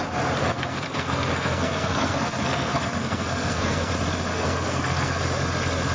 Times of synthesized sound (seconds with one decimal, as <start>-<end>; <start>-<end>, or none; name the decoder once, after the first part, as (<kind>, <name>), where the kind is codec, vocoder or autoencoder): 0.4-3.9 (codec, SNAC); 4.3-5.2